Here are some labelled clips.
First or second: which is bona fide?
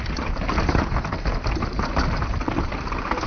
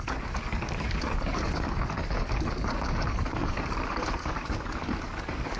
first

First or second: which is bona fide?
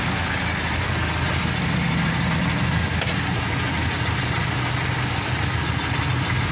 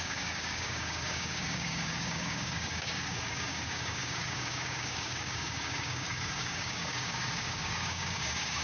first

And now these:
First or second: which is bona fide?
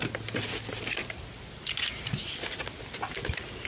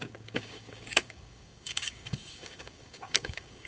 first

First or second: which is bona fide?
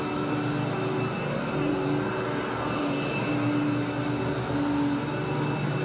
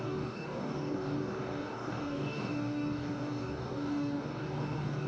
first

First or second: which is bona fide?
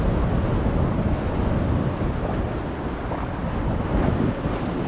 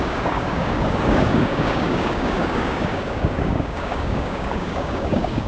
first